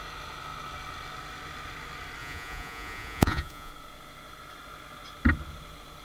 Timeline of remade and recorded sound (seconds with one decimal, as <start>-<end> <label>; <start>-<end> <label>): 0.0-2.2 recorded; 2.2-3.7 remade; 3.7-6.0 recorded